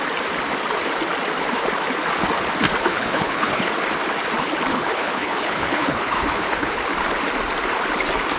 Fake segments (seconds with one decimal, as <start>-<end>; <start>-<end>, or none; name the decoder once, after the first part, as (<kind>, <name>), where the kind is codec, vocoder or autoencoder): 2.8-3.7 (codec, HILCodec); 4.7-6.8